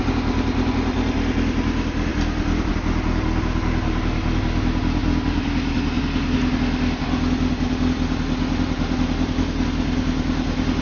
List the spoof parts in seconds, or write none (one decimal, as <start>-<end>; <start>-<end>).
2.1-2.7; 5.0-6.0